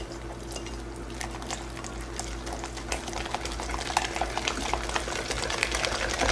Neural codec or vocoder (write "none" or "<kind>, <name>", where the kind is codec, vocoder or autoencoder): none